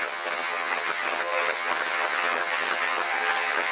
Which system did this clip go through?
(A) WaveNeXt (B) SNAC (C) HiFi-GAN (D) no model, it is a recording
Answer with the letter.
C